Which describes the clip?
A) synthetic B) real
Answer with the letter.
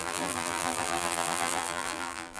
A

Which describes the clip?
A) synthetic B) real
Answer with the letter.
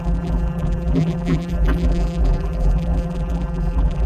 A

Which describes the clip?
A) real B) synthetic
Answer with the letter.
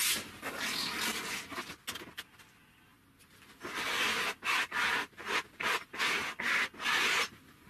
A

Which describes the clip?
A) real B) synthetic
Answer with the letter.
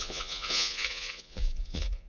B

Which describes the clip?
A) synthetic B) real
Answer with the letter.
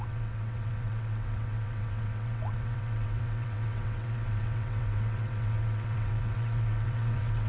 A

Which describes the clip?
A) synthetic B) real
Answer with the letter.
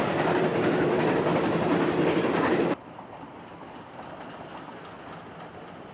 B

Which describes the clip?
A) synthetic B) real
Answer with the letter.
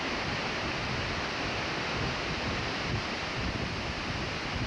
B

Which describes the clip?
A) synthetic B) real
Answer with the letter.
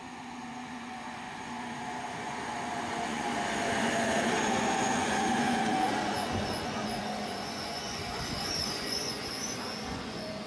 A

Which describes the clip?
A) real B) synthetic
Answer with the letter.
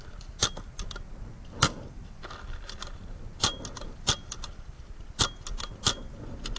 A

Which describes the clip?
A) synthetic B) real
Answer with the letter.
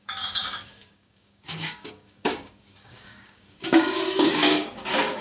A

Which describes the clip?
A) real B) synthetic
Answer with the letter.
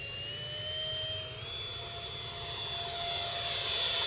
A